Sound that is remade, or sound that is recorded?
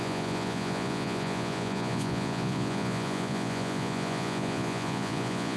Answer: remade